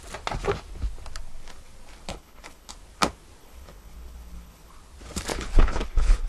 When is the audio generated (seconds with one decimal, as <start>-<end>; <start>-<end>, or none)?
2.1-2.7; 3.4-4.7; 5.3-6.3